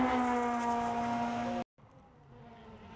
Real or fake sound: real